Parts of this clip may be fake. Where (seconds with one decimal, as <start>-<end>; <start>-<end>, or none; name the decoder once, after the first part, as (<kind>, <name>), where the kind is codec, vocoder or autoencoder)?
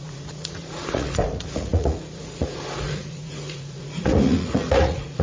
0.0-5.2 (vocoder, Vocos)